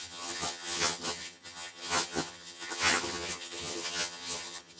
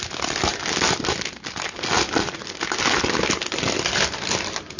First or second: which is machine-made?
first